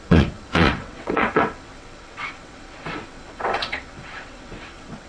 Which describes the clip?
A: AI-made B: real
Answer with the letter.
A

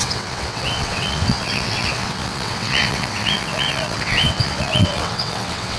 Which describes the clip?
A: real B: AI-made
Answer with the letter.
B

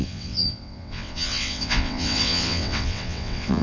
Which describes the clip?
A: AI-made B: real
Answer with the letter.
A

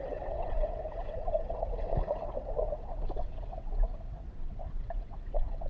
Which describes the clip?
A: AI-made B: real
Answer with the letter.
A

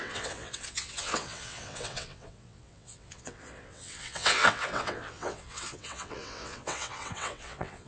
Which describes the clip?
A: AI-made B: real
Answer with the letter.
A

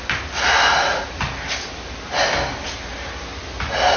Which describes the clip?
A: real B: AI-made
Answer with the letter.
A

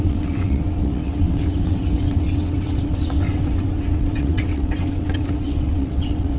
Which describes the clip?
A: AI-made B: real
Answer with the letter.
A